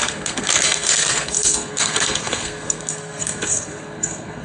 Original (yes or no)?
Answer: no